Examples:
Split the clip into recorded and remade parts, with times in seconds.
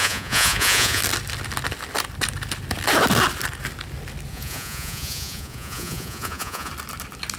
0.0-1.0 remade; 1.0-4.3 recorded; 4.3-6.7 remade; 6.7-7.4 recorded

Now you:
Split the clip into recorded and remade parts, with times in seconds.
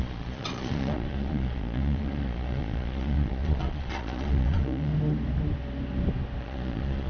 0.0-4.9 remade; 4.9-6.4 recorded; 6.4-7.1 remade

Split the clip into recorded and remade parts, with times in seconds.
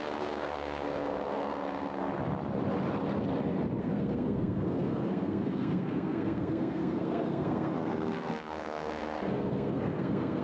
0.0-2.1 remade; 2.1-3.8 recorded; 3.8-10.4 remade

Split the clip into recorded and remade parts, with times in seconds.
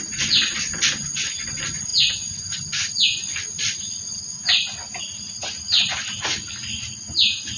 0.0-7.6 recorded